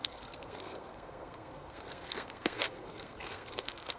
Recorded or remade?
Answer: remade